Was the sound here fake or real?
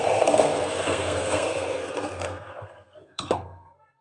fake